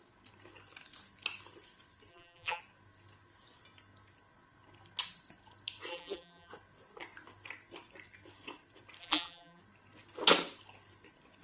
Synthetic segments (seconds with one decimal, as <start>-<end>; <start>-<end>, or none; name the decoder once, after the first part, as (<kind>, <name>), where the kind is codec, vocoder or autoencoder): 2.1-2.6 (vocoder, BigVGAN v2); 5.9-6.5; 9.0-9.6